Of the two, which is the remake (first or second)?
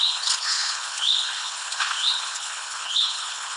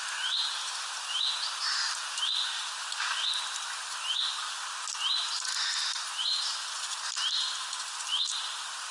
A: first